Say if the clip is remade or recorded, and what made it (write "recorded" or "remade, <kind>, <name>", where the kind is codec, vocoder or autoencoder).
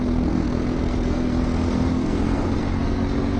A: remade, codec, SNAC